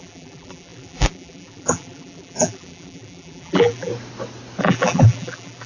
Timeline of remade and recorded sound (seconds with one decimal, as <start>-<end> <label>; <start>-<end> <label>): 0.0-3.9 remade; 3.9-4.6 recorded; 4.6-5.7 remade